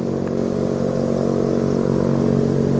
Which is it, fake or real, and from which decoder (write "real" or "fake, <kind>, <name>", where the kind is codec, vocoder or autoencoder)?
real